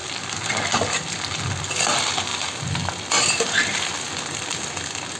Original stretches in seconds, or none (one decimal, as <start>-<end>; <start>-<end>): 0.0-5.2